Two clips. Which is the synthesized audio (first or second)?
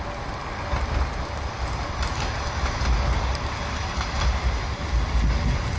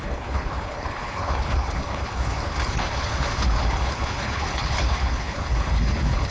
second